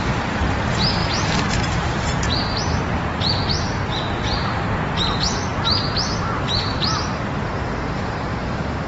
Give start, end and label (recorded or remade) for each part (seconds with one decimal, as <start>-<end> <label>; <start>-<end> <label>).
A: 0.0-1.0 remade; 1.0-1.5 recorded; 1.5-8.9 remade